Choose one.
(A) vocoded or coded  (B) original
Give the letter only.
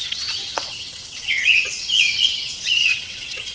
A